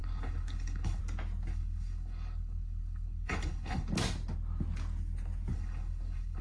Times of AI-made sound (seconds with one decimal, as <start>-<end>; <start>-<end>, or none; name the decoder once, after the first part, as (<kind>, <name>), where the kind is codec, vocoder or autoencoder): 0.0-1.0 (codec, HILCodec); 1.5-3.9; 5.5-6.4